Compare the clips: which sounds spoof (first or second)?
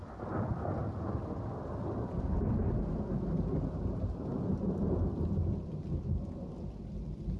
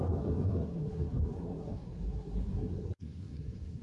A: second